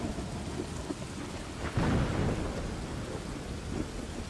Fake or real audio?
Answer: real